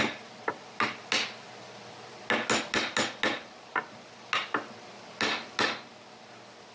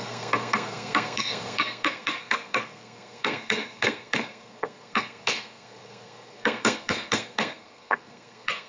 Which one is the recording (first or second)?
first